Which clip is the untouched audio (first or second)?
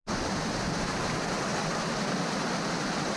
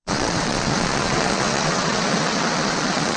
first